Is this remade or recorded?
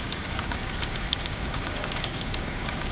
remade